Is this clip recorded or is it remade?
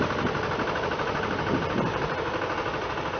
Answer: recorded